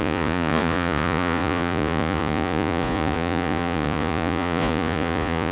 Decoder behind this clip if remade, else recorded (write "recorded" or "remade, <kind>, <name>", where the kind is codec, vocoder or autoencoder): remade, vocoder, Vocos